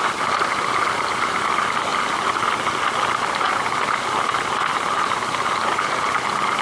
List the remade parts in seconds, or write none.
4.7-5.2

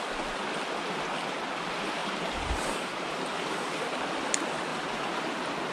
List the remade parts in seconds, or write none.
2.0-3.7; 4.7-5.2

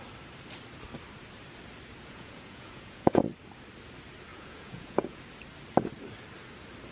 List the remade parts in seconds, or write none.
2.0-3.2; 4.3-5.2

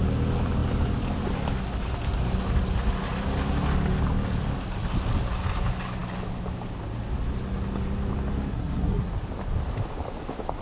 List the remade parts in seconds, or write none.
8.5-9.1